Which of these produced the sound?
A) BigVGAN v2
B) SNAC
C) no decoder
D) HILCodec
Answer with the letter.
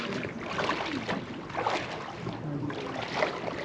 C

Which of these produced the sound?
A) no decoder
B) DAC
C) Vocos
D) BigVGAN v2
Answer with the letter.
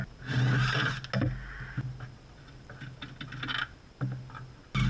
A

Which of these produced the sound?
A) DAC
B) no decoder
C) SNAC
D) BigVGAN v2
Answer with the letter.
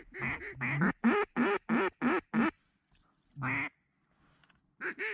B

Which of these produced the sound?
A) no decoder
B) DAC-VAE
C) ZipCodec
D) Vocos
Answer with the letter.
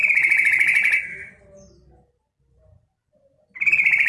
A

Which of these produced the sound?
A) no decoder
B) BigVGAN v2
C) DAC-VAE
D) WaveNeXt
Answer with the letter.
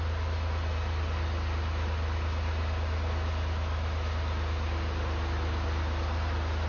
A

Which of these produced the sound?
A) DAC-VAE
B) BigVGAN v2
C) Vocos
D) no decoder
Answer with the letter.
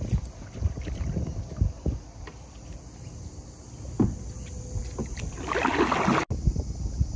D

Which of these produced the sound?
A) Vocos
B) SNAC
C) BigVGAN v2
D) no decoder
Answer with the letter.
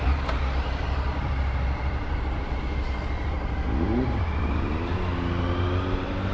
D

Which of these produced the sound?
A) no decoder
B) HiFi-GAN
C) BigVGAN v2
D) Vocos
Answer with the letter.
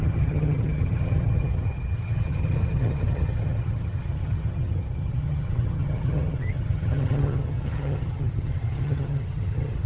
B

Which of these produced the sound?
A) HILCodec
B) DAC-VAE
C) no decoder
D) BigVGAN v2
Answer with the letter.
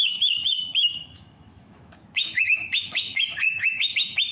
B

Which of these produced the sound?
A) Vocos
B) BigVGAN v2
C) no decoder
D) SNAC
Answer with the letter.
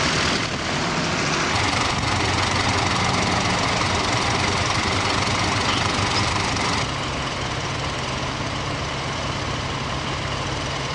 B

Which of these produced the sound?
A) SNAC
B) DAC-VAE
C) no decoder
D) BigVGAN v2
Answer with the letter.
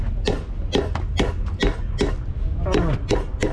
C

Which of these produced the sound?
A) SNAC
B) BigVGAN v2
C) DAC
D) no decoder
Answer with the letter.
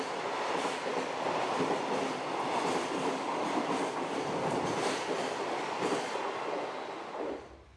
D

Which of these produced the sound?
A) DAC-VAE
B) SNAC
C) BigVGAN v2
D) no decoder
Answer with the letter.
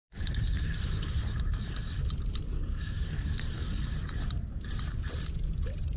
C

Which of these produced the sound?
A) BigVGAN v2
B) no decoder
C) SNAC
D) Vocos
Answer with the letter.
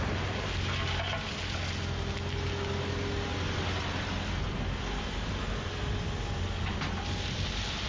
B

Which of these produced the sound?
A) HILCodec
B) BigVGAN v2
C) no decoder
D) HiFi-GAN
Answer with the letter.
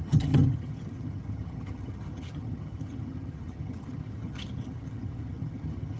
D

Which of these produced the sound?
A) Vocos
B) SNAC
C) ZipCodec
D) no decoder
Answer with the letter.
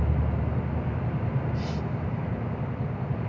D